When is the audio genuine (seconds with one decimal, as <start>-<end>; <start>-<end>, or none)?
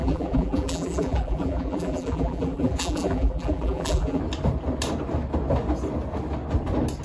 4.2-7.0